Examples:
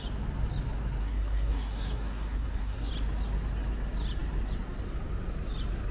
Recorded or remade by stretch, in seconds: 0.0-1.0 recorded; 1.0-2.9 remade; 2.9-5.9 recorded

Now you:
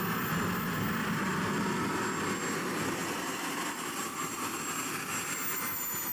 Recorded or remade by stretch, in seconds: 0.0-6.1 recorded

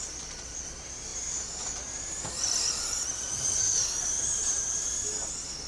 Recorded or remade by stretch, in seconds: 0.0-5.7 recorded